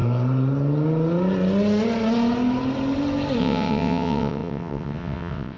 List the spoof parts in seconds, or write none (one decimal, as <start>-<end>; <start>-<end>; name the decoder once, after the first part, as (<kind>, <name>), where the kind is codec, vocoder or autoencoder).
3.4-5.6 (vocoder, WaveNeXt)